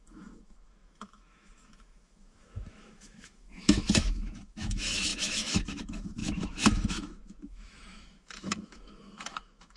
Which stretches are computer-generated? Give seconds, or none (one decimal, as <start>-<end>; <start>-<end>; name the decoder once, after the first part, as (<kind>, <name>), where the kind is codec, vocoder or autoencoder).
0.0-9.8 (autoencoder, DAC-VAE)